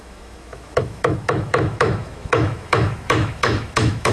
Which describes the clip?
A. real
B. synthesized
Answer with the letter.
B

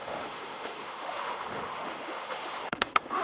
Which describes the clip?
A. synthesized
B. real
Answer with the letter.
A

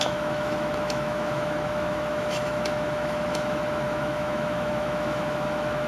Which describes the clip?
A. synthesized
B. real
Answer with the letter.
A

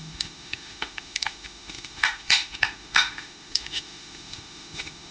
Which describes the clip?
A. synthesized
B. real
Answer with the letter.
A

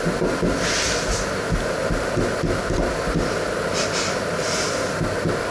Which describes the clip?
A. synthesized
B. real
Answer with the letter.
B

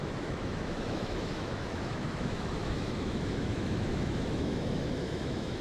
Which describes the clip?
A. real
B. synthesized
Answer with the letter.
B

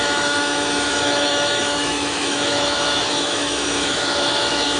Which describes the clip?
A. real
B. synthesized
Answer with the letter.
B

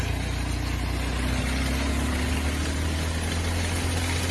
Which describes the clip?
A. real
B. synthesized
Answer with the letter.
A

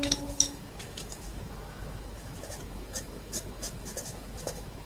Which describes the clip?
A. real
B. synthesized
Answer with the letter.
B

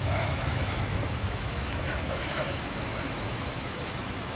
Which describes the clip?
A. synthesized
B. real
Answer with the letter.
A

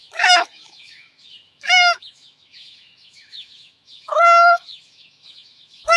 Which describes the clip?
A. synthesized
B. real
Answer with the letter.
A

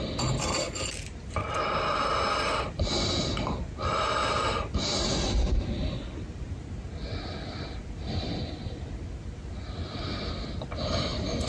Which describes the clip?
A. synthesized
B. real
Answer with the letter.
B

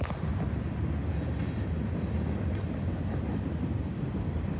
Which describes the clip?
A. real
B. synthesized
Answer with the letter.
A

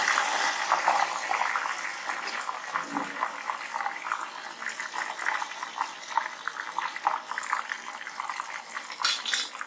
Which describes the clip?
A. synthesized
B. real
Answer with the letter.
B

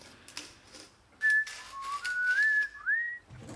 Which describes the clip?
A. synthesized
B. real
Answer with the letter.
B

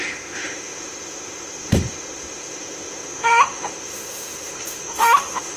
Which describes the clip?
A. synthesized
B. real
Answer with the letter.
A